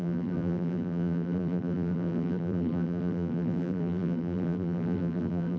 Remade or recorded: remade